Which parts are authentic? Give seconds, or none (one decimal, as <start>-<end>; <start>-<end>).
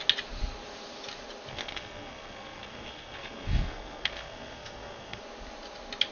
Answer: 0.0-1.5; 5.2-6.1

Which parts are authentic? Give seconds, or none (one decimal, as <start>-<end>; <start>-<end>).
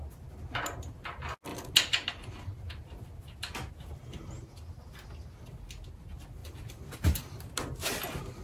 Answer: 0.0-6.4; 7.5-8.4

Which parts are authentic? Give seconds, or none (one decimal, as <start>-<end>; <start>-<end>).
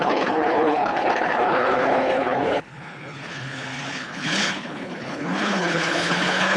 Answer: none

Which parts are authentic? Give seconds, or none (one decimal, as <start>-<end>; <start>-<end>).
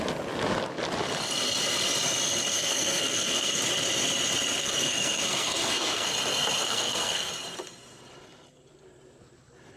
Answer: 0.0-2.5; 3.6-4.6; 6.1-6.6; 7.3-9.8